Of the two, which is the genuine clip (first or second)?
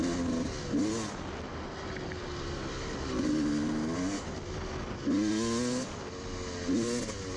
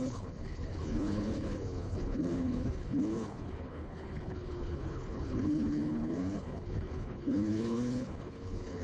first